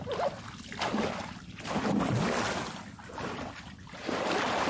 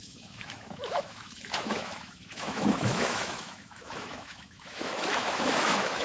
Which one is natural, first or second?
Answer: first